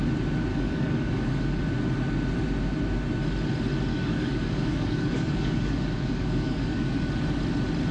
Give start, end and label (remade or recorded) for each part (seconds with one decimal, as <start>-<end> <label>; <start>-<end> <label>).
0.0-0.5 recorded; 0.5-1.6 remade; 1.6-3.9 recorded; 3.9-7.1 remade; 7.1-7.9 recorded